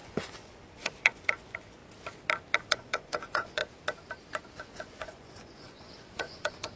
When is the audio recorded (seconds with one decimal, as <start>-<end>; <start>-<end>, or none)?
1.8-2.6; 3.6-4.6